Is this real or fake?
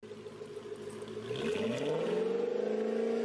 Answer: real